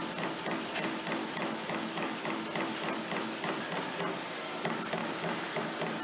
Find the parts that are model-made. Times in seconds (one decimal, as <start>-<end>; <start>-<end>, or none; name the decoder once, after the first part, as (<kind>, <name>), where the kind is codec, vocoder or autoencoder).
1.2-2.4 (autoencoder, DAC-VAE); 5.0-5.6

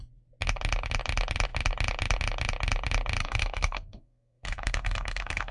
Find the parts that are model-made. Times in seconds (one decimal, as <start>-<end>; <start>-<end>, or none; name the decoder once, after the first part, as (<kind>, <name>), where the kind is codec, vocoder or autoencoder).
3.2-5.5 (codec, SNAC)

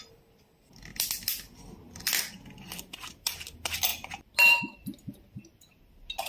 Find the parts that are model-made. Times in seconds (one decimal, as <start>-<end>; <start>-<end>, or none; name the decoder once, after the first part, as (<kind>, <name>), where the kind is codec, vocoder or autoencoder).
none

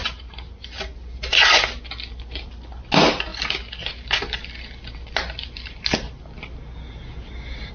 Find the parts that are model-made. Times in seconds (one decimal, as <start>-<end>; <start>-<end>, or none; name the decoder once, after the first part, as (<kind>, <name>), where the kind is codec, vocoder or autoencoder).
none

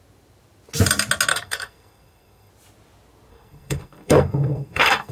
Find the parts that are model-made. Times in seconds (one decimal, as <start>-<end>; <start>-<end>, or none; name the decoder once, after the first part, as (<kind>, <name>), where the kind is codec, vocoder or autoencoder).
1.3-2.5 (codec, SNAC); 3.3-5.1

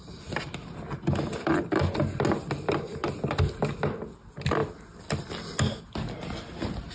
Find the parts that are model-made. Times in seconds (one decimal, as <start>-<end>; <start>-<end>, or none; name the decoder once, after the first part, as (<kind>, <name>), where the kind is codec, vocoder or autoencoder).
none

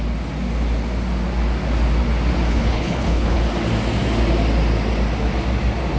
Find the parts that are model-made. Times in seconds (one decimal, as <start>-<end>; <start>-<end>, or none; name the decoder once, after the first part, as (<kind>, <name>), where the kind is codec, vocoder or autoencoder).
2.5-3.4 (codec, HILCodec)